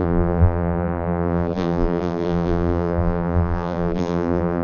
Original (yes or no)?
no